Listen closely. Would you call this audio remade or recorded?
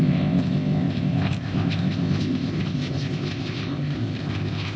remade